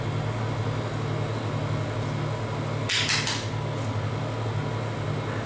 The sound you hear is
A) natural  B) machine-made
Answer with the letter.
A